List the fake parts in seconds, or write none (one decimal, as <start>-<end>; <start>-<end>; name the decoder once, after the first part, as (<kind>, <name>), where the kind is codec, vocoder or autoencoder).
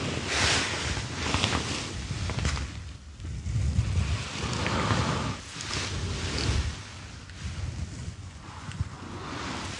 8.0-9.4 (vocoder, Vocos)